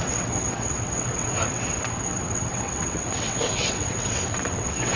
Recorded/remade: remade